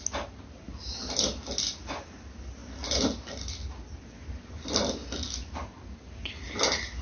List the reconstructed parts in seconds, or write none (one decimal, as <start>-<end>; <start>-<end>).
none